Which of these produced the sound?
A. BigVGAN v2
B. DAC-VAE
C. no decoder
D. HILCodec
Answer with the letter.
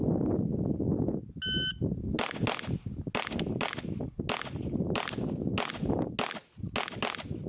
C